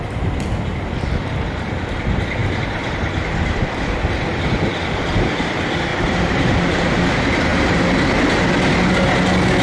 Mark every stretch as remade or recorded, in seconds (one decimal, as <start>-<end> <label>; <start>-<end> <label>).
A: 0.0-2.4 recorded; 2.4-3.0 remade; 3.0-5.9 recorded; 5.9-7.1 remade; 7.1-9.6 recorded